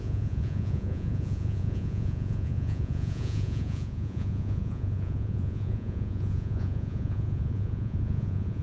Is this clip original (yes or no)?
no